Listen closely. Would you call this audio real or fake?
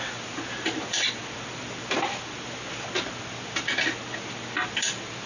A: real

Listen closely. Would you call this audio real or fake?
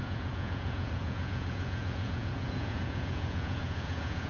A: fake